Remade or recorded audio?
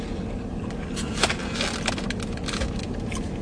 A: recorded